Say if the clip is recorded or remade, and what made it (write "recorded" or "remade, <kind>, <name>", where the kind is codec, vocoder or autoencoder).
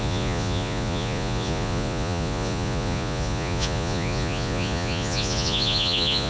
remade, vocoder, Vocos